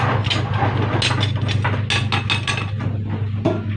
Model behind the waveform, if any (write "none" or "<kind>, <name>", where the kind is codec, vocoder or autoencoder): none